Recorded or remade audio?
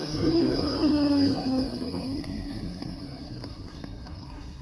remade